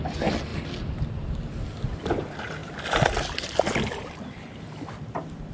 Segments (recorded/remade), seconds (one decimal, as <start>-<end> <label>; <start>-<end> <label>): 0.0-5.5 recorded